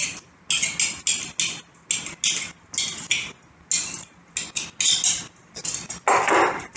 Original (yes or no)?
yes